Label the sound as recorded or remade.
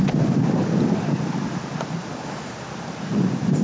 recorded